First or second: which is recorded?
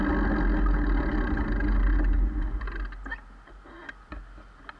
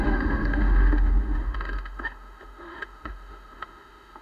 first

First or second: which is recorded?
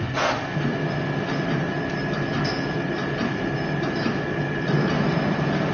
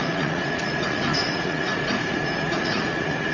first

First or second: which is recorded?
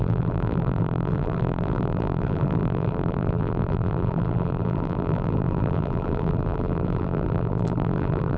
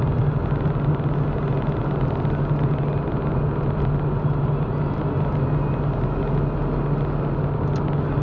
second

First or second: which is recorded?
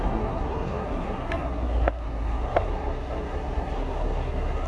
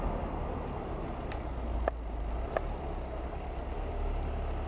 second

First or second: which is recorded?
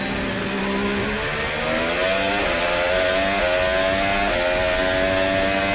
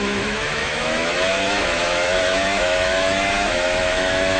first